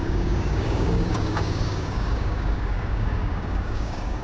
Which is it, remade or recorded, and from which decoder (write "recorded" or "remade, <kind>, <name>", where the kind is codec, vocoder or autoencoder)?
remade, codec, DAC